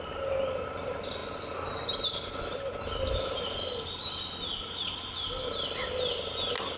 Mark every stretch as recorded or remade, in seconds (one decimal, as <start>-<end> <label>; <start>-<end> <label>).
0.0-6.8 recorded